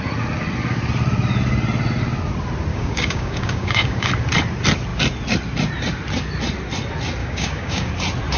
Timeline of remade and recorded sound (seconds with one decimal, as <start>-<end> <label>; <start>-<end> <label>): 0.0-2.7 recorded; 2.7-4.1 remade; 4.1-7.2 recorded; 7.2-7.9 remade; 7.9-8.4 recorded